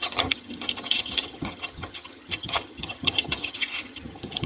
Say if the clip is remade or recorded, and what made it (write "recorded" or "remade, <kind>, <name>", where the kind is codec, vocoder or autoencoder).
remade, vocoder, HiFi-GAN